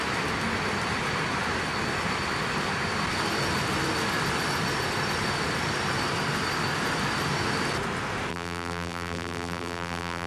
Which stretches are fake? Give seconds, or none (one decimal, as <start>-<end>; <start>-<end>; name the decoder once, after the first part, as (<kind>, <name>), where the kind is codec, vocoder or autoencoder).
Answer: 8.3-10.3 (vocoder, BigVGAN v2)